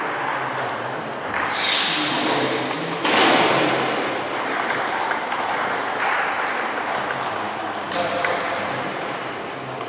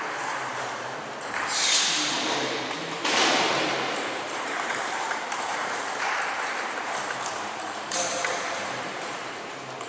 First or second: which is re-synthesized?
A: second